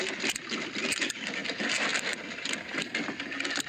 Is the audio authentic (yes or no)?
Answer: yes